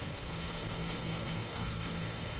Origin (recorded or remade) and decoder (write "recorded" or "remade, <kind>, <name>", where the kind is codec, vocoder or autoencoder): remade, codec, SNAC